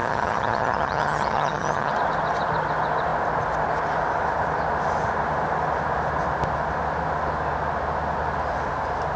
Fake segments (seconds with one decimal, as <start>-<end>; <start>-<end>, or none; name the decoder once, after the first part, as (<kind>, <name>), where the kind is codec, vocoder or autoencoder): 0.0-1.9 (vocoder, HiFi-GAN)